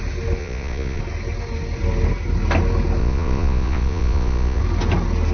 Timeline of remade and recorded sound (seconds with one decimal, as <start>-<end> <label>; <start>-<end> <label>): 0.0-0.4 recorded; 0.4-1.0 remade; 1.0-3.0 recorded; 3.0-4.6 remade; 4.6-5.3 recorded